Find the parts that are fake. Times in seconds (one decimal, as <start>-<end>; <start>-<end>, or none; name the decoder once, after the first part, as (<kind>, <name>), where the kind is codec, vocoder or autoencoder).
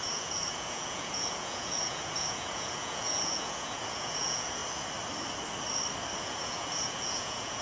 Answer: 0.0-4.6 (vocoder, Vocos); 6.2-7.6